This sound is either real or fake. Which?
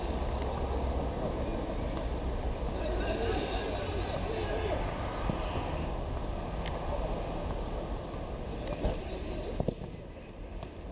real